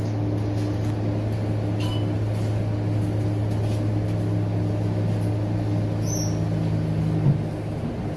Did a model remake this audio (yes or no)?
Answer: no